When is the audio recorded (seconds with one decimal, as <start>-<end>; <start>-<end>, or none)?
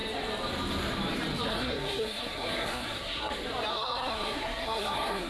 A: 0.0-1.5; 3.3-3.7